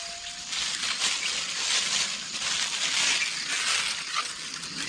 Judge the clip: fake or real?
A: real